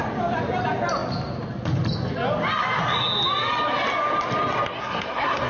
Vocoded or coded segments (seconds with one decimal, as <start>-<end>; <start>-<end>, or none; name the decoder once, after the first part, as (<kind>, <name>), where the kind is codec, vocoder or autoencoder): 4.8-5.5 (codec, SNAC)